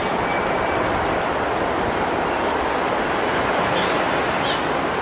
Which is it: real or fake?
real